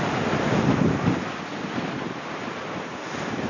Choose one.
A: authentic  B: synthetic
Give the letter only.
A